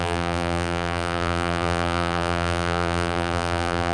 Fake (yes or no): yes